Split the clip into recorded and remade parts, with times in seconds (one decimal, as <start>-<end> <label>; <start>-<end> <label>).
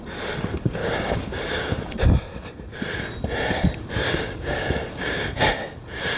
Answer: 0.0-0.8 recorded; 0.8-2.0 remade; 2.0-4.0 recorded; 4.0-5.4 remade; 5.4-6.2 recorded